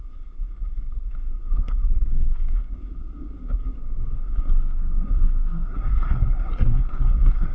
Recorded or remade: remade